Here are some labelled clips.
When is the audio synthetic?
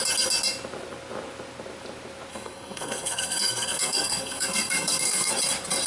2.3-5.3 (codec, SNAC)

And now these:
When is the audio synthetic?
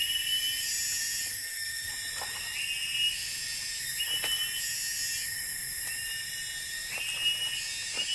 1.3-1.9 (codec, SNAC)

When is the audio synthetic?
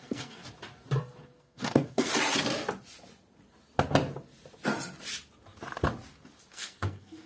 0.0-0.4 (codec, SNAC); 1.4-2.1; 6.5-7.3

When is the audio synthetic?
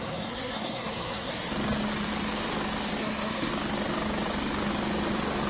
0.0-1.3 (codec, SNAC); 3.0-3.5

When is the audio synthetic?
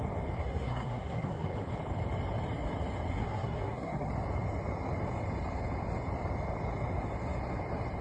0.4-1.7 (codec, SNAC); 3.1-4.1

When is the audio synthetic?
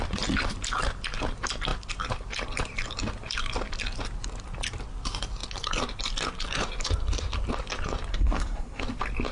8.1-8.8 (codec, SNAC)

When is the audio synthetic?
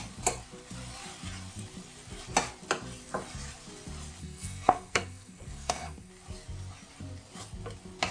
4.2-6.1 (codec, SNAC)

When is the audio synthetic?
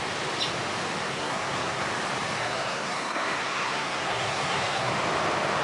1.1-1.8 (codec, SNAC); 2.4-4.9